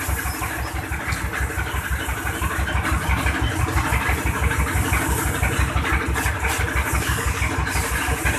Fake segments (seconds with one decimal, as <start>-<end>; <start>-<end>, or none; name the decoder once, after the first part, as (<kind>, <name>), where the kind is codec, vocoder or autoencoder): 6.8-7.4 (codec, DAC)